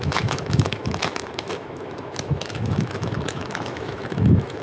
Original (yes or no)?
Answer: no